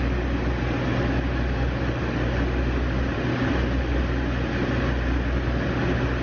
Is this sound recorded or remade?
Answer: recorded